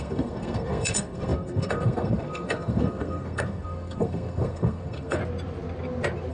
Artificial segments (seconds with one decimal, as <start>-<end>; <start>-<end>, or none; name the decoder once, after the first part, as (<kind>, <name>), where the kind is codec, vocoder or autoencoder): 0.0-5.2 (codec, SNAC)